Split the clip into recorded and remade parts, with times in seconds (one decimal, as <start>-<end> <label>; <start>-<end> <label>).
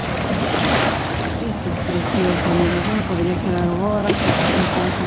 0.0-1.8 recorded; 1.8-3.0 remade; 3.0-4.0 recorded; 4.0-5.1 remade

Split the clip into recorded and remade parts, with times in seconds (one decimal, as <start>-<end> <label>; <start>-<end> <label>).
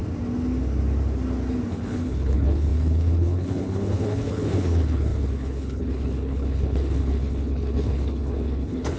0.0-1.7 recorded; 1.7-9.0 remade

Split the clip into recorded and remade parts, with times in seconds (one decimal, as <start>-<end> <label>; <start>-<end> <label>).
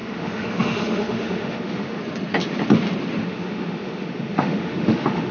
0.0-2.0 remade; 2.0-3.2 recorded; 3.2-5.3 remade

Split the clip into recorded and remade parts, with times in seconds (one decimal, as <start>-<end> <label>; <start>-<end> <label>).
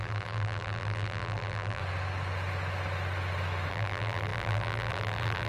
0.0-1.8 remade; 1.8-3.7 recorded; 3.7-5.5 remade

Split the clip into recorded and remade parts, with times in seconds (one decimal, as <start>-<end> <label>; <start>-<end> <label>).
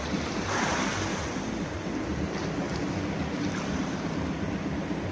0.0-0.9 remade; 0.9-3.7 recorded; 3.7-5.1 remade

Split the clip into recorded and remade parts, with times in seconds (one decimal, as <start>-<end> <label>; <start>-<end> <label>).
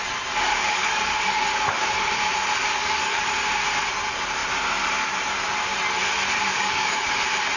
0.0-0.5 recorded; 0.5-2.1 remade; 2.1-2.6 recorded; 2.6-3.3 remade; 3.3-6.5 recorded; 6.5-7.1 remade; 7.1-7.6 recorded